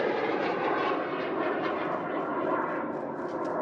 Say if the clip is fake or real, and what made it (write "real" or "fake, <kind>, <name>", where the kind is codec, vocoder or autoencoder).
real